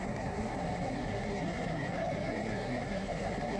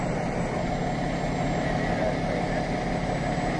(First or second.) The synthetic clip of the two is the first